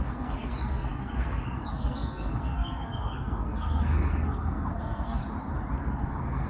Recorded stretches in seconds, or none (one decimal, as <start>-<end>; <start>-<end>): 5.2-5.8